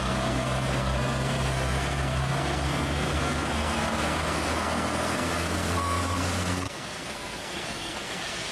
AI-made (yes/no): yes